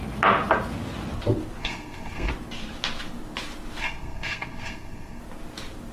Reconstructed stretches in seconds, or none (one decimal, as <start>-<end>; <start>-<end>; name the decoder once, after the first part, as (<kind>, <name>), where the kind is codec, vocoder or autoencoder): 1.6-2.3 (codec, SNAC); 3.8-5.2